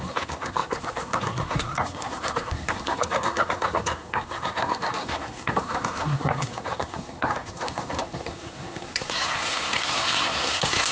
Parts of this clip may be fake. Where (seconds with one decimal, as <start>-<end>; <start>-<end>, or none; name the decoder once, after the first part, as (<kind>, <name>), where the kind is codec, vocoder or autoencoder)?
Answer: 0.0-10.9 (codec, SNAC)